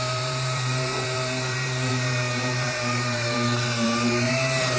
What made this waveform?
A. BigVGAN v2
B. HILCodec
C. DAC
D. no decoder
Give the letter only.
A